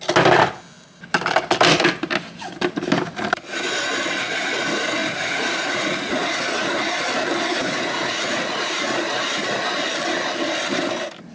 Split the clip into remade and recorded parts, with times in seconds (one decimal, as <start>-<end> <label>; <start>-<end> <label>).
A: 0.0-5.0 recorded; 5.0-6.2 remade; 6.2-7.5 recorded; 7.5-8.9 remade; 8.9-11.3 recorded